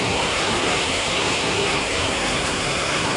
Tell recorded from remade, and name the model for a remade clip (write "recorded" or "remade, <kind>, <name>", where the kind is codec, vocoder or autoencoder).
remade, codec, SNAC